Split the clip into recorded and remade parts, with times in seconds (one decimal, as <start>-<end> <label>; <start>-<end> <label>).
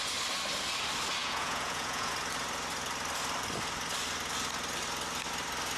0.0-1.2 recorded; 1.2-2.1 remade; 2.1-5.8 recorded